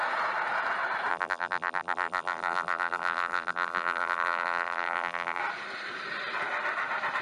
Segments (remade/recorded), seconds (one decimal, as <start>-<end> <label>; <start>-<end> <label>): 0.0-1.1 recorded; 1.1-5.4 remade; 5.4-7.2 recorded